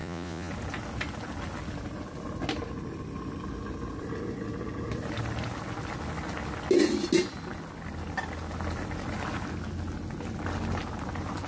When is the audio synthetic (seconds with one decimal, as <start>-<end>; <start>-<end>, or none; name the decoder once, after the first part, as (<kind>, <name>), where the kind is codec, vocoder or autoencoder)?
0.0-0.5 (vocoder, Vocos)